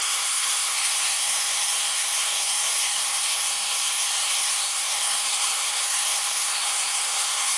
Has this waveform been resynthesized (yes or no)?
yes